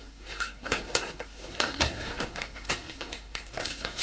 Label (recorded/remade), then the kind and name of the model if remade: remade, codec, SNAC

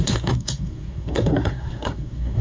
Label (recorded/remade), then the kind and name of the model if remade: remade, codec, SNAC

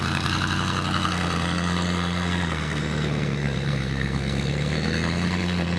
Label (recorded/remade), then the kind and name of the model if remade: remade, codec, SNAC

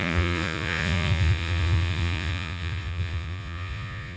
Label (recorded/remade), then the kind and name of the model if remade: remade, vocoder, Vocos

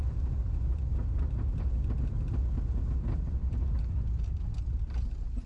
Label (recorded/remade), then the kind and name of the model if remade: recorded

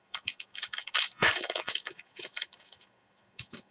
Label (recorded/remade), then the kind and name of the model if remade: remade, autoencoder, DAC-VAE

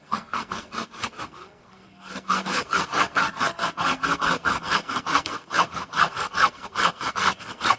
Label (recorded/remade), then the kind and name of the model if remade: remade, codec, SNAC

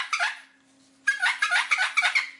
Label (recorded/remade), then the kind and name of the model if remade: recorded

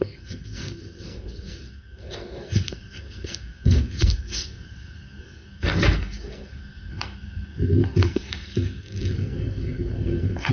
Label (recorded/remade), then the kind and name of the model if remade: remade, codec, SNAC